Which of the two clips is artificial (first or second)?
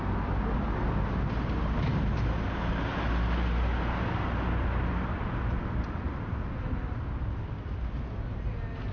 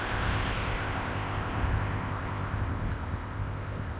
second